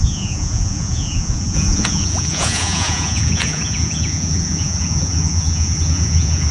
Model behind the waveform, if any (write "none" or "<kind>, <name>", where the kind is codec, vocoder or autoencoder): vocoder, Vocos